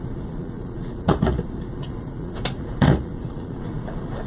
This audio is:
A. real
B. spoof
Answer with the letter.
B